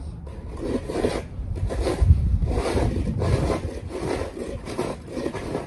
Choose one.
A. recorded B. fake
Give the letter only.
A